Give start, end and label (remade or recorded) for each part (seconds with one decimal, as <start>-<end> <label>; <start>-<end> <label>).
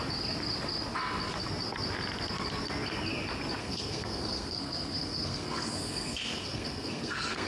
0.0-3.6 recorded; 3.6-7.5 remade